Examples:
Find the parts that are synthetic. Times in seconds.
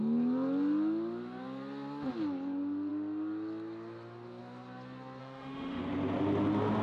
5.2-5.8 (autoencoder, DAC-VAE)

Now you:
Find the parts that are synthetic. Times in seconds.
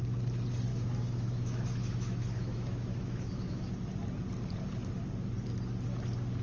0.7-3.7 (autoencoder, DAC-VAE)